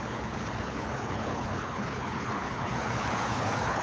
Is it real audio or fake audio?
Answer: fake